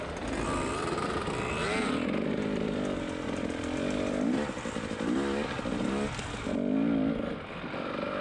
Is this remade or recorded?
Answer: recorded